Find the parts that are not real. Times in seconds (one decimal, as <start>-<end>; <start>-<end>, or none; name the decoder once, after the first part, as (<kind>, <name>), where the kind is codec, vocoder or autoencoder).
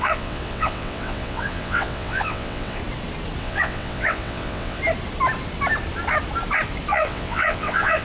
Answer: 0.0-2.8 (vocoder, WaveNeXt); 3.4-4.8; 6.9-8.0